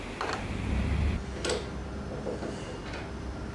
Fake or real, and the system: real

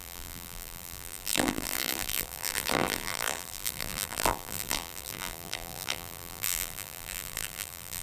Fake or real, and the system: fake, vocoder, BigVGAN v2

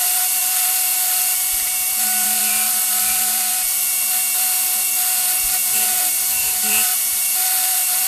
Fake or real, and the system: fake, vocoder, BigVGAN v2